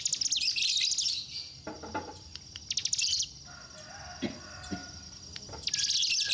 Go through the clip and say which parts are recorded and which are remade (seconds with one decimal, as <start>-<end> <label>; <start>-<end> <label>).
0.0-2.8 recorded; 2.8-3.3 remade; 3.3-6.3 recorded